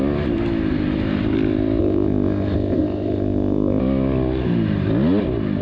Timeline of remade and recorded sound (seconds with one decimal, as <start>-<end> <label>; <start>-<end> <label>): 0.0-1.8 recorded; 1.8-3.8 remade; 3.8-5.6 recorded